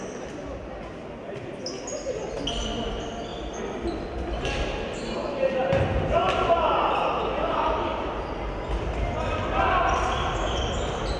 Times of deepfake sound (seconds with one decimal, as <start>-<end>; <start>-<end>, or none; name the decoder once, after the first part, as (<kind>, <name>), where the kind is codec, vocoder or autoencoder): none